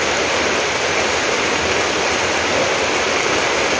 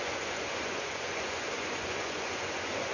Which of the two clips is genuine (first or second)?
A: first